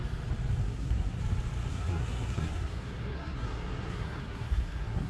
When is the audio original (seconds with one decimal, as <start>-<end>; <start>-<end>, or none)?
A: 0.0-0.6; 1.2-1.7